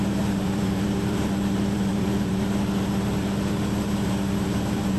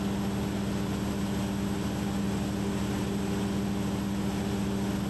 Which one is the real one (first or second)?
second